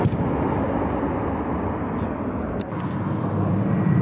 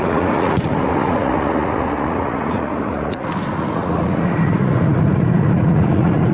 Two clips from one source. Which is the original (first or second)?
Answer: first